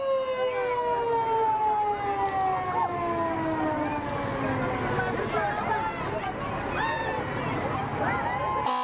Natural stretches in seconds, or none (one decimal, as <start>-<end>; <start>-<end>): 0.0-8.8